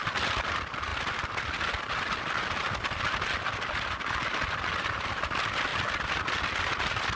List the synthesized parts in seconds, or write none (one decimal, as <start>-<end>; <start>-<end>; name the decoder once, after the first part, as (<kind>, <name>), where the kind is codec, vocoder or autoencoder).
none